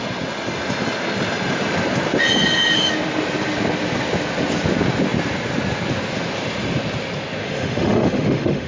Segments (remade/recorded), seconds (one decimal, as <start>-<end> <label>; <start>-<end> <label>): 0.0-7.4 recorded; 7.4-8.7 remade